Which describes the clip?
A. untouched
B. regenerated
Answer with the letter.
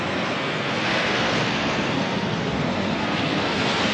B